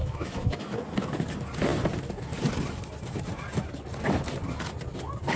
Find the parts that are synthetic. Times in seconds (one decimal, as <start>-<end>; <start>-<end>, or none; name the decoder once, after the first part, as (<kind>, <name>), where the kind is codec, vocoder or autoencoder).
0.0-0.7 (autoencoder, DAC-VAE)